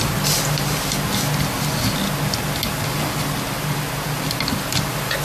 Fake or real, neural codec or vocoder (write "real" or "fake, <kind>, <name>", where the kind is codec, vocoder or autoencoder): real